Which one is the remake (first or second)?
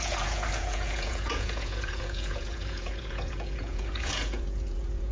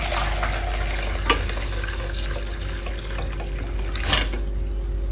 first